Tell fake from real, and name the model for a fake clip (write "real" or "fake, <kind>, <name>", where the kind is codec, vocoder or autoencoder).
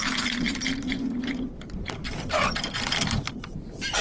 real